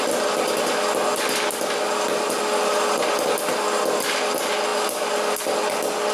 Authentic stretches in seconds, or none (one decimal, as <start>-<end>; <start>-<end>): 0.0-6.1

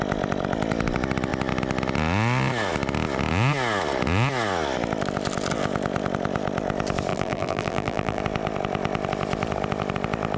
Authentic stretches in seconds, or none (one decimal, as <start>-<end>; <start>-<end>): 0.0-7.1; 8.2-10.4

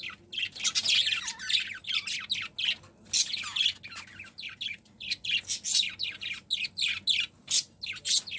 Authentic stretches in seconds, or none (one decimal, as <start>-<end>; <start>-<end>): 0.0-8.4

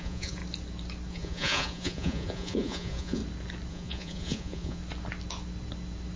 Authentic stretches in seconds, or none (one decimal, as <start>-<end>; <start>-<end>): 0.4-1.1; 3.2-3.7; 4.8-6.2

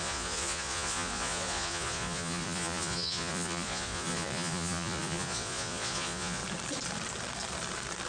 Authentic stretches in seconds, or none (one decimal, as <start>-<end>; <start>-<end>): 6.4-8.1